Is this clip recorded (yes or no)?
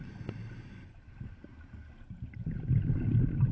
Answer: yes